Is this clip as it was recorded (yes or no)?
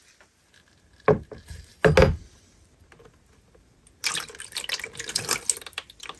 yes